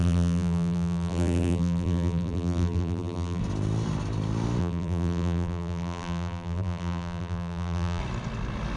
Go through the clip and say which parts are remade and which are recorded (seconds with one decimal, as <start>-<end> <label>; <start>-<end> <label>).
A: 0.0-3.4 remade; 3.4-4.6 recorded; 4.6-8.0 remade; 8.0-8.8 recorded